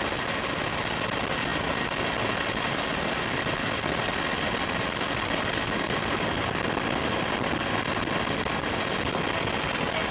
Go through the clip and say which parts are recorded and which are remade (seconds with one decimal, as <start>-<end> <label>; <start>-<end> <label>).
0.0-10.1 recorded